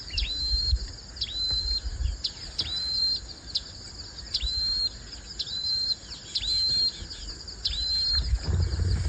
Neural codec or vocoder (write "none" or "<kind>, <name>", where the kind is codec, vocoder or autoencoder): none